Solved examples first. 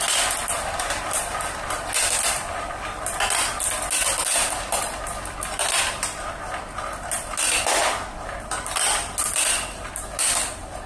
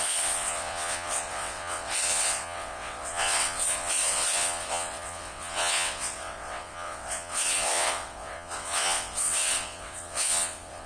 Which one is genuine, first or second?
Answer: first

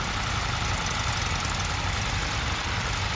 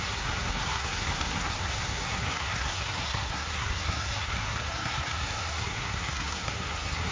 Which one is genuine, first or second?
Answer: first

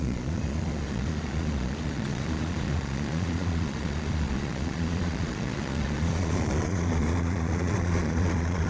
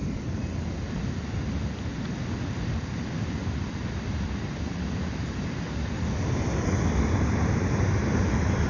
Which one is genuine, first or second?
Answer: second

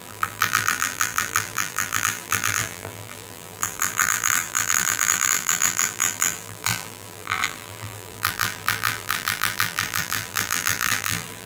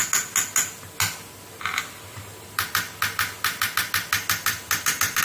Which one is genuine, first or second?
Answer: second